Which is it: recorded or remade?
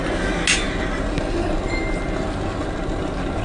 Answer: recorded